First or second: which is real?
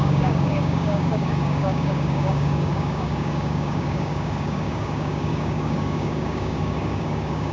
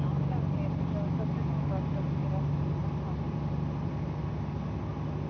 second